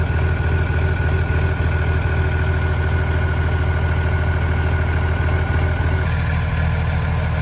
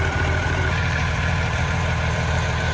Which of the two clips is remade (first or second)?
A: second